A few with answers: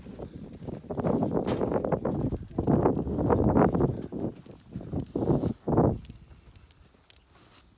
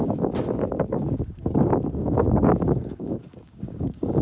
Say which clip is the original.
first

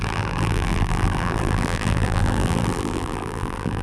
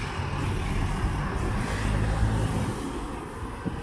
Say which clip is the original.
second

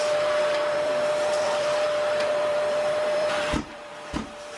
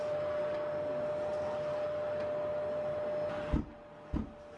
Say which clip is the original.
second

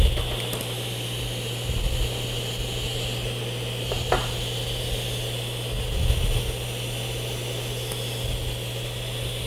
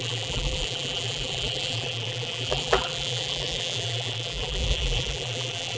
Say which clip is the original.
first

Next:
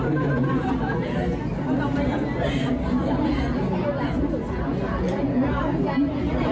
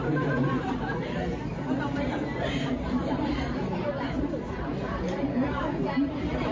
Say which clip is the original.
first